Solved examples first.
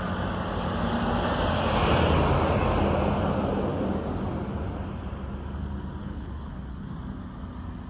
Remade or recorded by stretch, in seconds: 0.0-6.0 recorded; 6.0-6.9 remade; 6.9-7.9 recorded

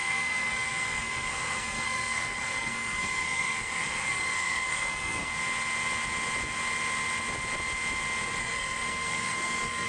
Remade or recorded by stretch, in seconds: 0.0-5.3 remade; 5.3-8.4 recorded; 8.4-9.9 remade

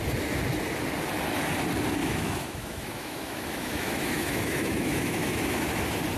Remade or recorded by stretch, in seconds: 0.0-2.0 recorded; 2.0-5.7 remade; 5.7-6.2 recorded

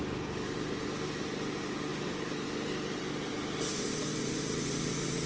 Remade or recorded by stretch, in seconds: 0.0-5.3 recorded

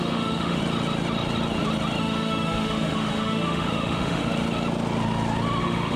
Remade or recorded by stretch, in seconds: 0.0-0.6 remade; 0.6-2.0 recorded; 2.0-4.2 remade; 4.2-5.6 recorded; 5.6-6.0 remade

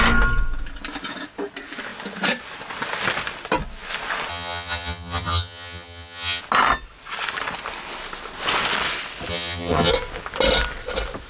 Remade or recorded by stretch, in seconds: 0.0-4.3 recorded; 4.3-6.4 remade; 6.4-9.3 recorded; 9.3-9.9 remade; 9.9-11.3 recorded